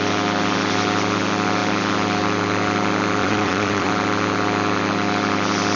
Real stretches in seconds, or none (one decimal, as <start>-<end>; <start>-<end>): 0.0-3.2; 3.9-5.8